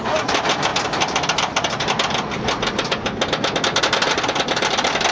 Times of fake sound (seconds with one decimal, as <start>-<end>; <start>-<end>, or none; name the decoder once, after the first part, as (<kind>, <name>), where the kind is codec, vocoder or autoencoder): none